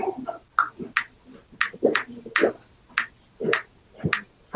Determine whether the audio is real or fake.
real